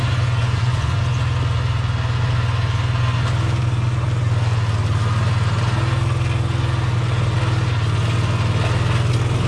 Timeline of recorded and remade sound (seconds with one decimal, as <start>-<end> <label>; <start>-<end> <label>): 0.0-0.4 recorded; 0.4-1.0 remade; 1.0-9.5 recorded